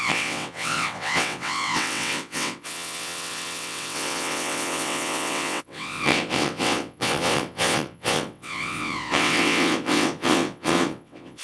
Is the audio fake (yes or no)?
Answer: yes